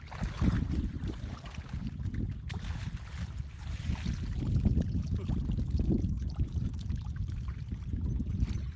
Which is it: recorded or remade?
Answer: recorded